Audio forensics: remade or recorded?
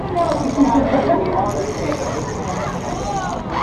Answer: recorded